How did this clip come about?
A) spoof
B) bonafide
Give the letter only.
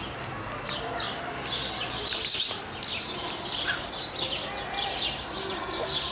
B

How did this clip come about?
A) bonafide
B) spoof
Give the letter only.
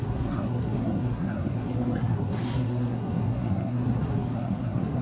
B